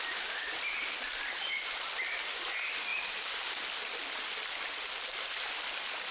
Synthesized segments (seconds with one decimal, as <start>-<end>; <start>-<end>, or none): 2.9-3.6